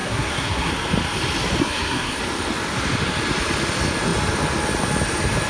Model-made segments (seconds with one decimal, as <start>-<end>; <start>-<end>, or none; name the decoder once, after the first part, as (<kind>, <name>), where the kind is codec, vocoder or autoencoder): 0.0-0.7 (codec, SNAC); 1.6-2.2